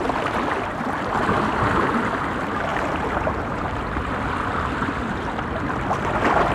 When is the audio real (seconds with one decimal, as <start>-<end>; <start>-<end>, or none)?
0.0-2.7; 4.1-6.5